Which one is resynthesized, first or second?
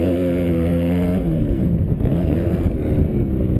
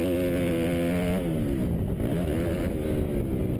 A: first